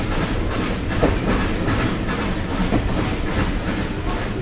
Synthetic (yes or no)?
no